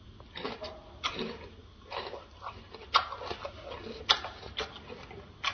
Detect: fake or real real